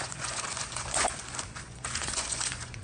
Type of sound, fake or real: fake